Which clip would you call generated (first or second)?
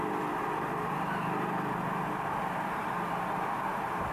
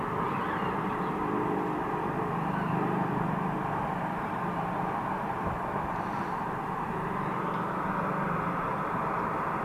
second